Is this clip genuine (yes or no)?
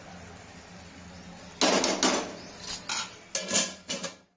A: yes